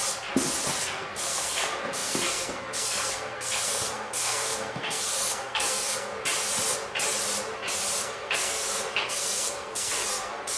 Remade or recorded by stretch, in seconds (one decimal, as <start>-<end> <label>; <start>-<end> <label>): 0.0-0.8 recorded; 0.8-6.1 remade; 6.1-8.0 recorded; 8.0-10.6 remade